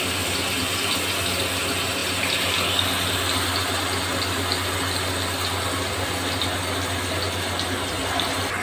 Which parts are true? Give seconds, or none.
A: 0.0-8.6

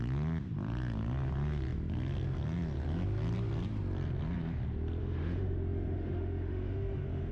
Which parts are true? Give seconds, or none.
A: 0.0-5.0

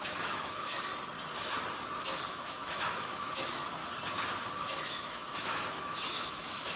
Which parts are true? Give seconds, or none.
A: 0.9-2.3; 3.8-4.6

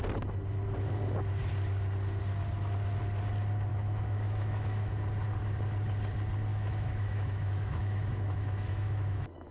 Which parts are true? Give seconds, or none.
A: 0.0-3.7; 4.9-6.5